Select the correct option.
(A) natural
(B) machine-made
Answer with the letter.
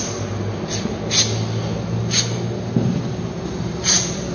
A